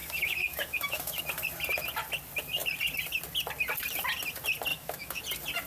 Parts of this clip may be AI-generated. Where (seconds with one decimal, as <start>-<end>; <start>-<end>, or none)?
0.0-1.2; 4.7-5.2

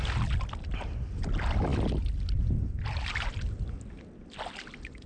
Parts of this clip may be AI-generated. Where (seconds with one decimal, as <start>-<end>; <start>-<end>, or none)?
none

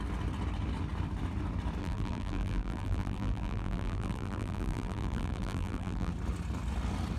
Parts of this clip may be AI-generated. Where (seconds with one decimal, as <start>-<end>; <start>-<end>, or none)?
1.8-6.1

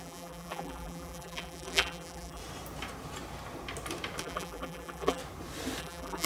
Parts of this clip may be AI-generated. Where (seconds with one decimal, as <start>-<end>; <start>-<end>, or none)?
0.0-2.4; 4.2-5.2; 5.8-6.3